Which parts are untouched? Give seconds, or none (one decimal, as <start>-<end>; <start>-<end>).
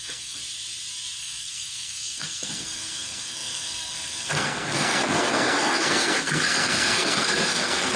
0.4-1.2